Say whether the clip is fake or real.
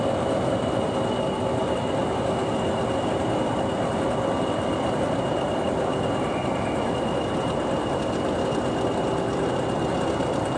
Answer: real